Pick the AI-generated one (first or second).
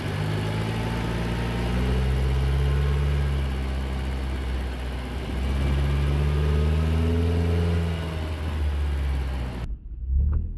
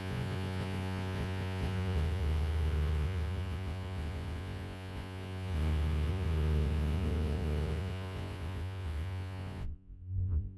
second